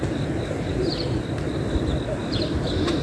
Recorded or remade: recorded